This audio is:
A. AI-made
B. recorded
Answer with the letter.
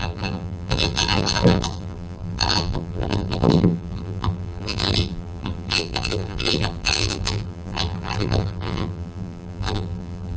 A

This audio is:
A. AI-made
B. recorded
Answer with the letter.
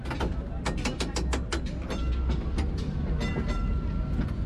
B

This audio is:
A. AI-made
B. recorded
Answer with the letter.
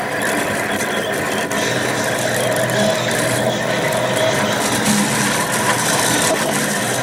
B